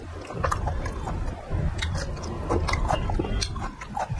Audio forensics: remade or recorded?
remade